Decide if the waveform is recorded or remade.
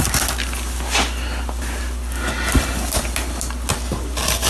recorded